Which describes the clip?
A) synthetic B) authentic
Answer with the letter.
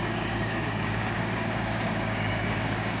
A